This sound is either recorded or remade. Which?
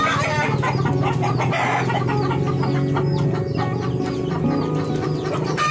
recorded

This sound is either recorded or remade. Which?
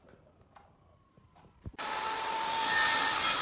recorded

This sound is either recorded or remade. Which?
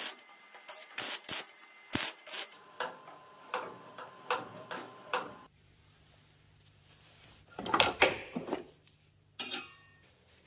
remade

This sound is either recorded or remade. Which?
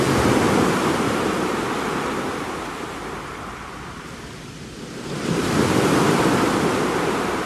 recorded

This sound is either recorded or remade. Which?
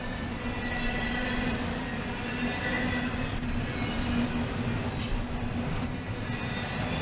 recorded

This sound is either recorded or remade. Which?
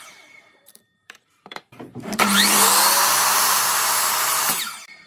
remade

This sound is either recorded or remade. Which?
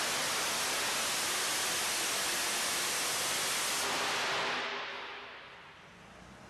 recorded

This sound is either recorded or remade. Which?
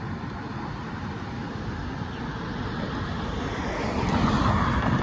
recorded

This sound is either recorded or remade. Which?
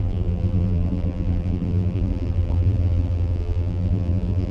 remade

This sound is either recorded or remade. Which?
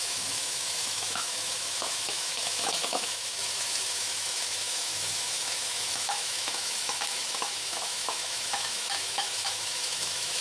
remade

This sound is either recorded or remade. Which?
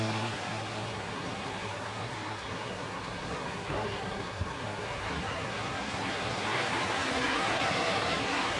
remade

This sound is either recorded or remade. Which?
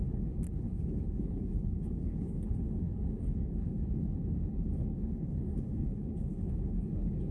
remade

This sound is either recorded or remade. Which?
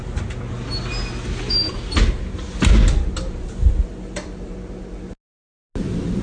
recorded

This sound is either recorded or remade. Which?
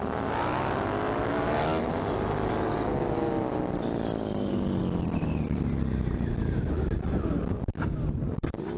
recorded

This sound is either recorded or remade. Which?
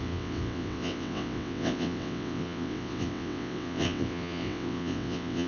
remade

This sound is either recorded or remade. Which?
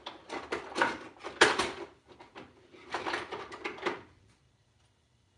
recorded